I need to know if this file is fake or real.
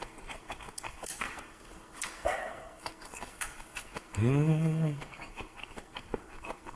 fake